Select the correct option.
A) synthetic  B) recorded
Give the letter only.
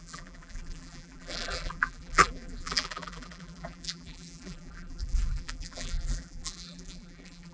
A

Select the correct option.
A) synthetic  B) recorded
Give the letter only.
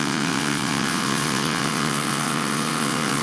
A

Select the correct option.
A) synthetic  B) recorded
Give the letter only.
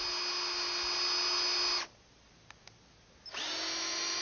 B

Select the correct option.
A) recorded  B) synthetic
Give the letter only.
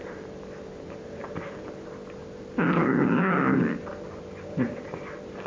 A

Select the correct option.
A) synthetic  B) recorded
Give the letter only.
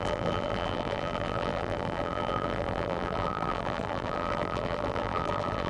A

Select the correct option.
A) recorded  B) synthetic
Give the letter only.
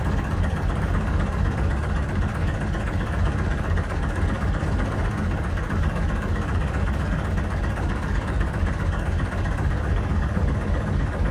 B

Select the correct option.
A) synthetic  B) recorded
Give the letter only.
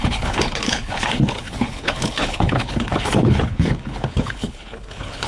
A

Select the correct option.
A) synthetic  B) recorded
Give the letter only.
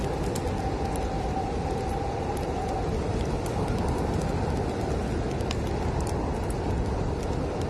B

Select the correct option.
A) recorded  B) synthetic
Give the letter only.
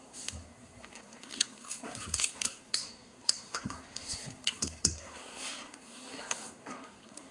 B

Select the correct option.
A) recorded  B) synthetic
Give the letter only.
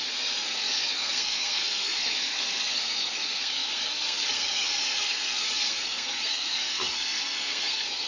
B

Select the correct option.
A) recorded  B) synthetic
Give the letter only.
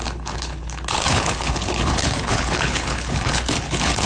B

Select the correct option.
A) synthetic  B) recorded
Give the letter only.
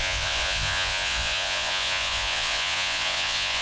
A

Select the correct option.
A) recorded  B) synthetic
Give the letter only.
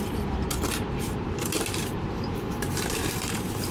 B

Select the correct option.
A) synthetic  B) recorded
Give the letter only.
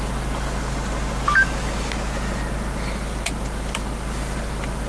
B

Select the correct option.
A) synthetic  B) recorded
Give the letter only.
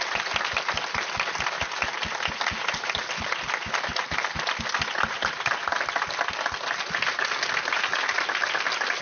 B